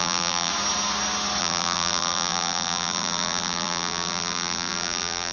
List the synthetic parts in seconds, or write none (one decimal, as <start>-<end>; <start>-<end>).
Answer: 0.0-0.5; 1.4-5.3